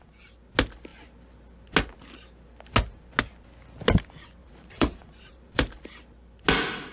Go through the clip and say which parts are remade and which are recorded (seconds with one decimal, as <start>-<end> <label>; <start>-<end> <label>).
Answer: 0.0-4.4 recorded; 4.4-6.0 remade; 6.0-6.9 recorded